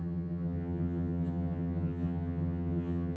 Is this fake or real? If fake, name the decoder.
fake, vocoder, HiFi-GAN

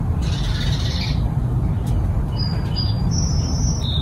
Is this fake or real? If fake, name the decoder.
real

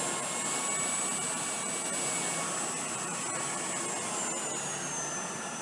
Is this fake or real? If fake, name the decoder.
real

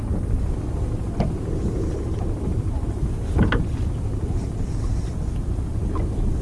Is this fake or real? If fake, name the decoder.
real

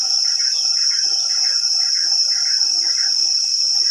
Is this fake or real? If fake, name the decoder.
fake, vocoder, BigVGAN v2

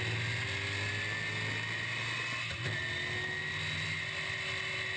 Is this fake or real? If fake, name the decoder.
real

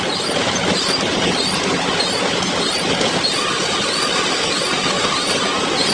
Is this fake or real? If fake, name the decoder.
real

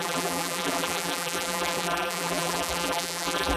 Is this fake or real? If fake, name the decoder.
fake, vocoder, BigVGAN v2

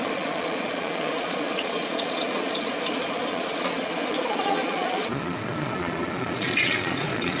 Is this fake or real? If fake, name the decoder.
fake, vocoder, Vocos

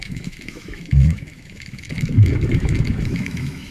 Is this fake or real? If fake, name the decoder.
fake, autoencoder, DAC-VAE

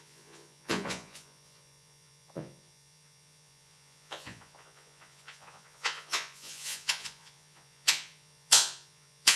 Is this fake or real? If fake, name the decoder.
fake, vocoder, Vocos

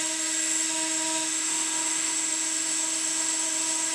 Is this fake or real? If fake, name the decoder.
fake, autoencoder, DAC-VAE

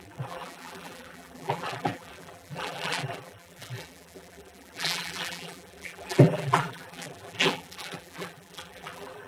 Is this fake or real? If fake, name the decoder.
fake, vocoder, BigVGAN v2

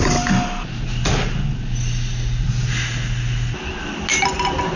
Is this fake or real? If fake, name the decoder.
real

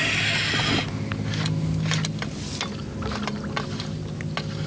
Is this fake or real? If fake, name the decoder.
real